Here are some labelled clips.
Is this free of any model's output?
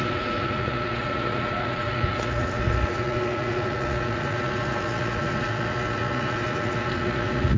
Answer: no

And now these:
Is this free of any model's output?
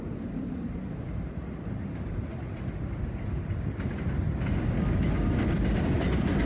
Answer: yes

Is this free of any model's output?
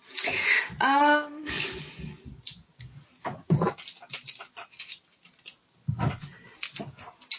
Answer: yes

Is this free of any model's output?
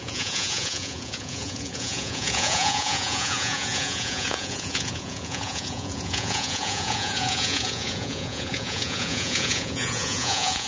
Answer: no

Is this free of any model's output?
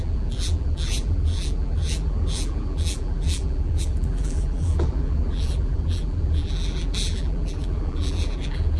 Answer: no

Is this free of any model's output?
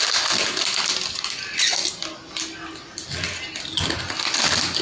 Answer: yes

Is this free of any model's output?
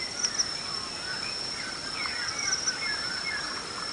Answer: yes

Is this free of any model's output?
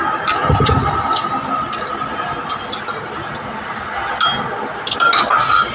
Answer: yes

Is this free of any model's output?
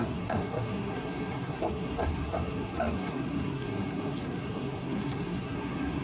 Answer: no